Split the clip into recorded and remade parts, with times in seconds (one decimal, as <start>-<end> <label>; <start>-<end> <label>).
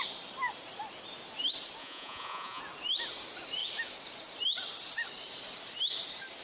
0.0-1.8 recorded; 1.8-2.6 remade; 2.6-6.4 recorded